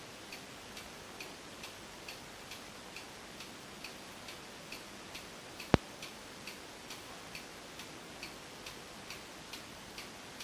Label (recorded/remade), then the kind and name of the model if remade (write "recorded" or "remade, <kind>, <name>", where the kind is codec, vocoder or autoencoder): recorded